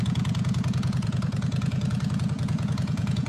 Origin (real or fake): fake